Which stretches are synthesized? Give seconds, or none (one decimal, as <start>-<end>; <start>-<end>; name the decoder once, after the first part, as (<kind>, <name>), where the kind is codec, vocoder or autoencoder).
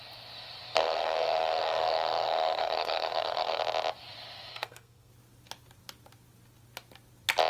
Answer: 0.7-3.6 (codec, SNAC); 4.5-5.1